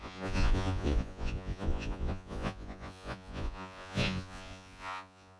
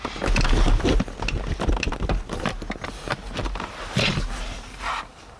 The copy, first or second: first